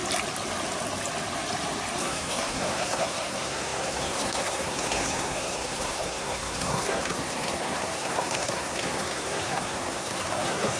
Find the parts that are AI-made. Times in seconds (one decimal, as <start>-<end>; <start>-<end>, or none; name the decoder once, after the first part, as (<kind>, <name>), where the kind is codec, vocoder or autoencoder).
2.0-10.8 (codec, SNAC)

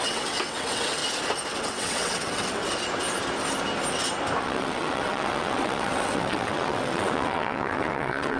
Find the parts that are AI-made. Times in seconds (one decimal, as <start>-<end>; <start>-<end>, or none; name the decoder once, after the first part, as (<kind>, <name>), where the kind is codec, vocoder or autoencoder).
0.0-1.0 (vocoder, WaveNeXt); 1.5-2.6; 4.4-8.4